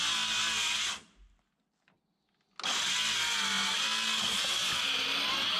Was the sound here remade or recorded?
recorded